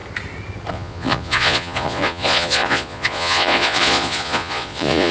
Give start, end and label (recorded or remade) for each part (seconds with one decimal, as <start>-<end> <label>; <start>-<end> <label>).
0.0-0.7 recorded; 0.7-5.1 remade